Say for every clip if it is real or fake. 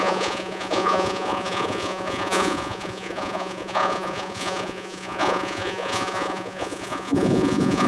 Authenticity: fake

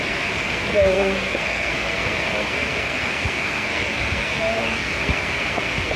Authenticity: fake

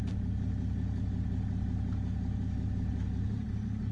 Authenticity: real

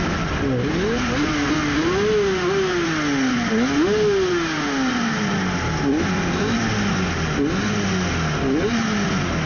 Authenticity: real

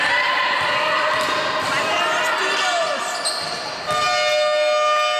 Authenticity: real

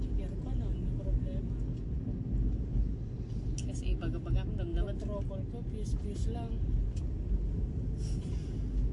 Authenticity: real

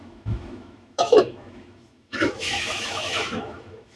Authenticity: fake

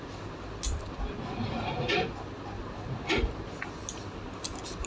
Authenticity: real